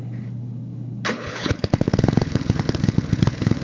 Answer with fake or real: fake